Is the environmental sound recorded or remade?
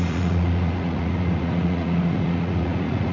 remade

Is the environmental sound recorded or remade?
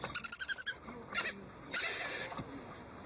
recorded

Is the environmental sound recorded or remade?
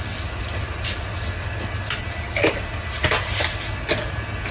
recorded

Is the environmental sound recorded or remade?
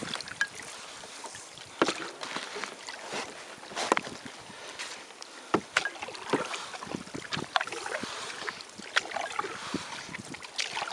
recorded